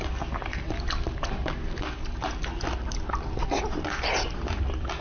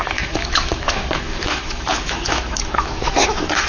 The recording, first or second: first